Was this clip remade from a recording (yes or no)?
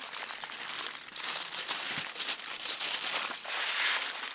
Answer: no